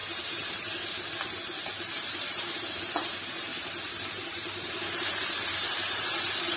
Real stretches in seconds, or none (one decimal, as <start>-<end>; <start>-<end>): 3.5-4.1